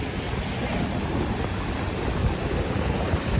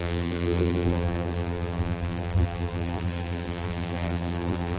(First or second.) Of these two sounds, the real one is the first